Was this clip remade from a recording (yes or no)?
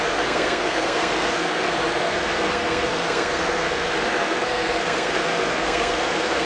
yes